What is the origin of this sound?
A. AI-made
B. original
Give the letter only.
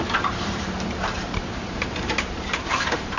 A